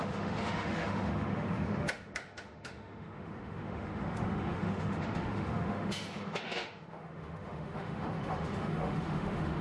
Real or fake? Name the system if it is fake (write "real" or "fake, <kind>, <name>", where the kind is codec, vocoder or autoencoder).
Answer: fake, autoencoder, DAC-VAE